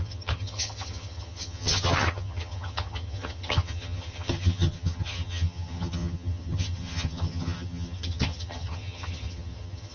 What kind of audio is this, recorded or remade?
remade